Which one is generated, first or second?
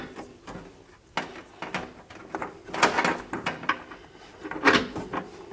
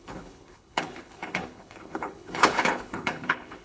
second